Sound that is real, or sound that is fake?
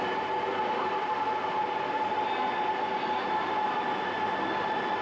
real